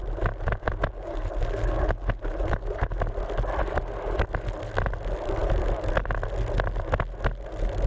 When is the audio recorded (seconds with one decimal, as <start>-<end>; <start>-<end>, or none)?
0.0-7.9